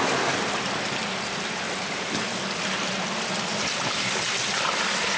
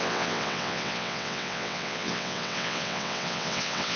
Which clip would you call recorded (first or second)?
first